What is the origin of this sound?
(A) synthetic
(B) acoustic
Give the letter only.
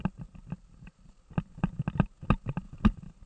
B